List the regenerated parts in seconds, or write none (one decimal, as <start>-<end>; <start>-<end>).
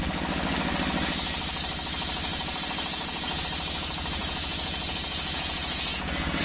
2.3-3.4; 4.2-6.4